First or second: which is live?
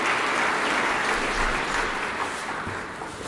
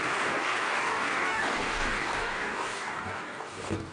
first